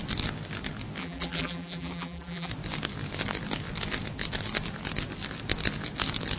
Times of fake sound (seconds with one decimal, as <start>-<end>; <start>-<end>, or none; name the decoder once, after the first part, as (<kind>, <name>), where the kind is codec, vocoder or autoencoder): 1.0-2.5 (vocoder, BigVGAN v2)